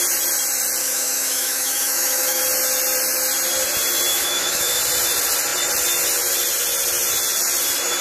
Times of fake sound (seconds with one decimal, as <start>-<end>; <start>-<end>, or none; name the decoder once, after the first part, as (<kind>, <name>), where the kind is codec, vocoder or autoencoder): 0.8-2.4 (autoencoder, DAC-VAE); 4.1-4.8

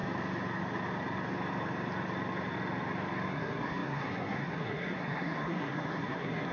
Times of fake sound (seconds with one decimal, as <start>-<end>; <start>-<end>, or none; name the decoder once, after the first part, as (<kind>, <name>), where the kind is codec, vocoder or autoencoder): 3.3-6.5 (codec, SNAC)

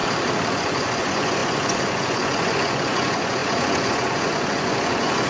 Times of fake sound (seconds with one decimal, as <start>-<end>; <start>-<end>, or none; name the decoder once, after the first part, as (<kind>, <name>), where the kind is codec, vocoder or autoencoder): 0.5-5.3 (vocoder, Vocos)

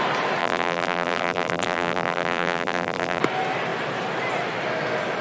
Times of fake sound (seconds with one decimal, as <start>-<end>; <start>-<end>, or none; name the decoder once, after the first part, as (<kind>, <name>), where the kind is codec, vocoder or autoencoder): 0.4-3.2 (vocoder, BigVGAN v2)

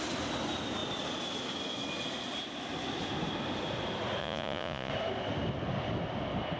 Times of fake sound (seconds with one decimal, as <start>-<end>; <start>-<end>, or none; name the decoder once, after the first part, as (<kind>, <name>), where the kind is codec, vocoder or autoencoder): 4.2-4.9 (vocoder, Vocos)

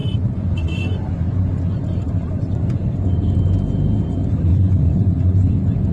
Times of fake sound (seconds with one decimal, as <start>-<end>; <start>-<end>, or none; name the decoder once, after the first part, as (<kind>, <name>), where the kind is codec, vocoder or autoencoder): 0.0-3.1 (vocoder, Vocos); 4.5-5.5

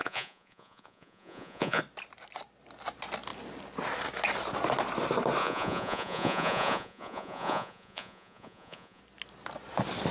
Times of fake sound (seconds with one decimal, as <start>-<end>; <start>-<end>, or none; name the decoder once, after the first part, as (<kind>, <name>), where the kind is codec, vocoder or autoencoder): 0.0-1.8 (vocoder, Vocos); 5.4-9.0